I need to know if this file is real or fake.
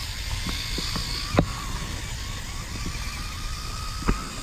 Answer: real